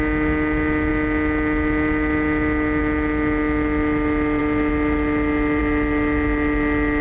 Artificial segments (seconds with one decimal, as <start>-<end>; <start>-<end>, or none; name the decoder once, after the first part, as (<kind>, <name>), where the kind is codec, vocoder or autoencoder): none